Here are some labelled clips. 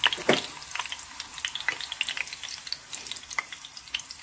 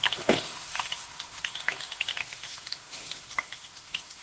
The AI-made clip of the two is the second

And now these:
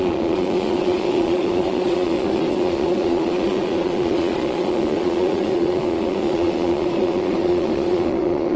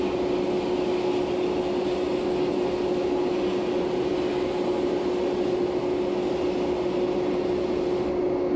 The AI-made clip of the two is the first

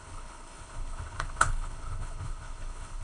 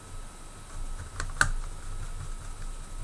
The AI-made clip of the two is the first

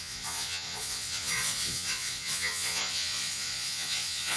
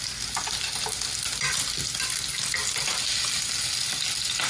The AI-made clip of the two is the first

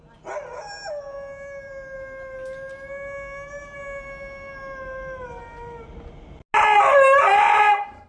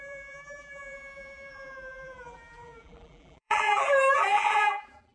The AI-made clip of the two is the second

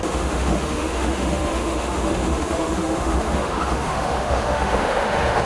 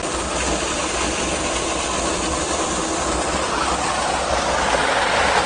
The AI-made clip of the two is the first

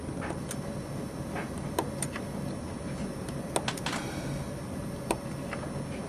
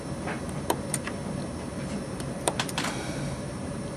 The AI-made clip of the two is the second